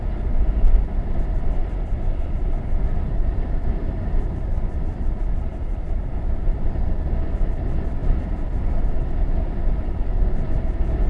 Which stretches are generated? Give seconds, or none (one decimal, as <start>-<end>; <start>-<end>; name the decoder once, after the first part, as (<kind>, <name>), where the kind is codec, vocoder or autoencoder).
1.6-6.9 (vocoder, BigVGAN v2); 8.0-8.7